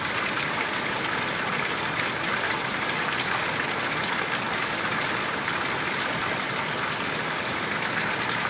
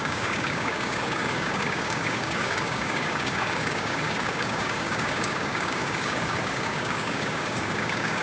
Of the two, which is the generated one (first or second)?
second